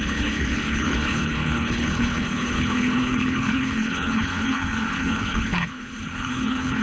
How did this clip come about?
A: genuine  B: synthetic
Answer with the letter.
B